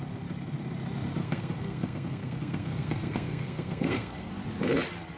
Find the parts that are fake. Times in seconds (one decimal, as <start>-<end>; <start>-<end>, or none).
1.2-4.3